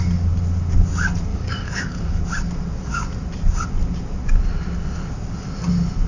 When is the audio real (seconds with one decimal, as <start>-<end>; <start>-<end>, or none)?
0.0-1.3; 2.2-6.1